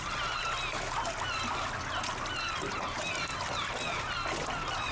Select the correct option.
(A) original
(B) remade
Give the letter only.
A